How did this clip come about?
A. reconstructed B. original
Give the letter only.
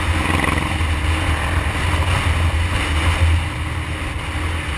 B